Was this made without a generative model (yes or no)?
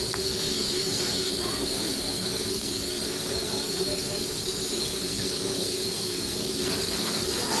no